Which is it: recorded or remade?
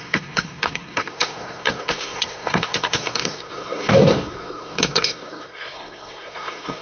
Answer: remade